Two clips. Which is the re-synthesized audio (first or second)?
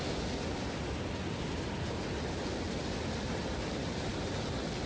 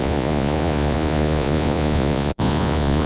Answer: second